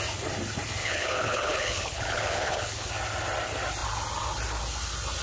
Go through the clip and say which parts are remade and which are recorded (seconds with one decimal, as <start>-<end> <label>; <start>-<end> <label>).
0.0-0.8 recorded; 0.8-2.9 remade; 2.9-5.2 recorded